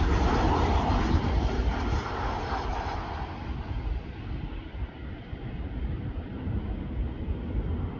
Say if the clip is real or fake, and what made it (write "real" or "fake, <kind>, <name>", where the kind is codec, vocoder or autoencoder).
real